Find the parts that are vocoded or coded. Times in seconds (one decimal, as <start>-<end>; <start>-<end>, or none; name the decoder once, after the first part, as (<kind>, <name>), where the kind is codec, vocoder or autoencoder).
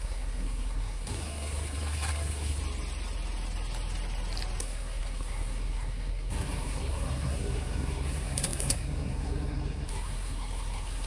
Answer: 0.0-2.6 (codec, SNAC); 4.6-11.1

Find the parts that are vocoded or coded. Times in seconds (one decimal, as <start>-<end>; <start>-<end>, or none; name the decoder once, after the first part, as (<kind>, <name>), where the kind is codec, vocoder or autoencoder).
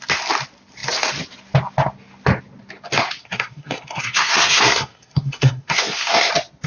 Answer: 3.2-6.3 (codec, SNAC)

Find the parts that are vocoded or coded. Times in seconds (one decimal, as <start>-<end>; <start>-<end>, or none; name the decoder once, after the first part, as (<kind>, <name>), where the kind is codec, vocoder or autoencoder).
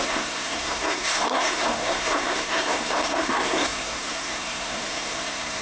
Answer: 0.0-5.6 (codec, SNAC)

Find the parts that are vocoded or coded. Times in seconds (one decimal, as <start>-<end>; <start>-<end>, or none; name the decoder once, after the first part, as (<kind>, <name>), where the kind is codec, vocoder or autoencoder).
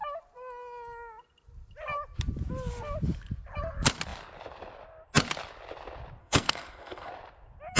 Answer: 6.2-7.1 (codec, SNAC)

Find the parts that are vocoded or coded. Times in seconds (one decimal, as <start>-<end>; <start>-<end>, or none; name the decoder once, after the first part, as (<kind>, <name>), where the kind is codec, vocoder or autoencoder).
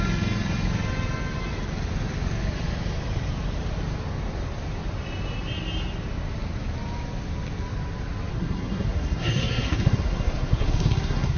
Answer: 8.3-11.4 (codec, SNAC)